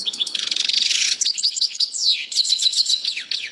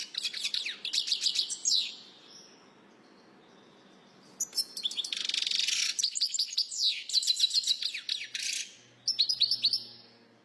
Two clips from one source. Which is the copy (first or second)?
first